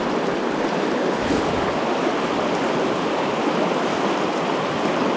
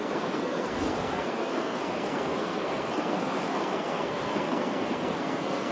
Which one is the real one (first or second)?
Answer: first